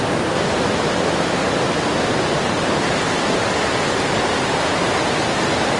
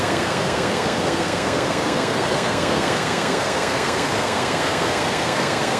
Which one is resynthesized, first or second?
second